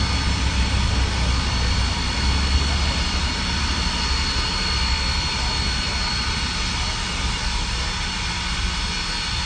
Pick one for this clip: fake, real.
real